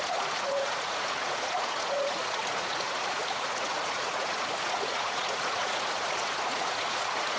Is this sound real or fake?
fake